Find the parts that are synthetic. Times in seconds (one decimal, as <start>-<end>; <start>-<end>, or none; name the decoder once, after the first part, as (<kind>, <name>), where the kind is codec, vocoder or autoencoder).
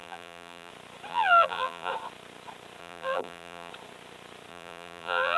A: 0.0-0.7 (vocoder, BigVGAN v2); 1.1-1.9; 2.8-3.7; 4.5-5.4